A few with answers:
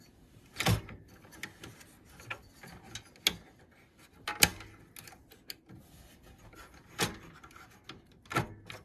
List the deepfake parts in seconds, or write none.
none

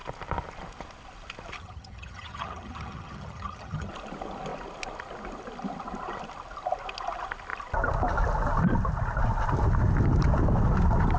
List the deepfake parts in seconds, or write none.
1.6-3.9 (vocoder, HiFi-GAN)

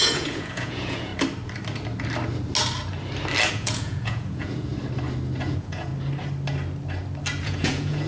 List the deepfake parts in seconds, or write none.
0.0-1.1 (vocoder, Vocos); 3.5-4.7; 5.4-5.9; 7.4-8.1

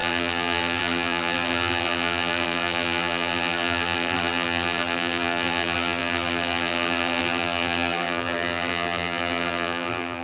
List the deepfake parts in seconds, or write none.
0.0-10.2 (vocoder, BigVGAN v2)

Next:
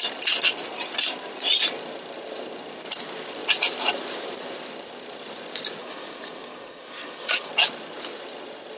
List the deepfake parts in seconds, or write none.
5.8-7.5 (codec, DAC)